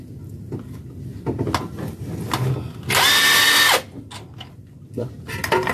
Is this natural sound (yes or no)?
yes